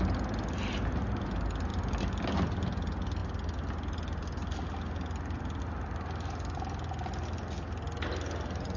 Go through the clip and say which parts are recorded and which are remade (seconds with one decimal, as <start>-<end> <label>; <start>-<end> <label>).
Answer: 0.0-8.8 recorded